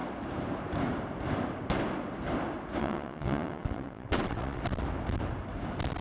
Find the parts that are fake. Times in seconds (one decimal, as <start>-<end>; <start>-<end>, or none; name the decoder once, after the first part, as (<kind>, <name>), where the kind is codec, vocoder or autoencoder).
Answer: 2.8-4.6 (vocoder, WaveNeXt)